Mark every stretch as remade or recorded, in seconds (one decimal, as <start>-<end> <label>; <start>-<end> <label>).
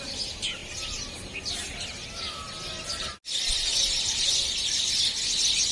0.0-5.7 recorded